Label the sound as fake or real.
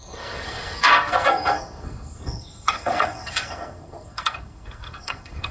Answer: fake